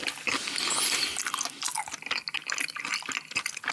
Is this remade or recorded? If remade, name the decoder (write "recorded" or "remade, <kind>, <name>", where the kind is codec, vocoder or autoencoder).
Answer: recorded